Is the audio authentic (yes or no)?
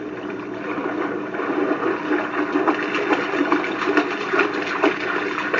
yes